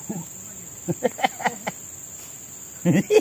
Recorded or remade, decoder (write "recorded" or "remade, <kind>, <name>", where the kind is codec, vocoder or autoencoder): recorded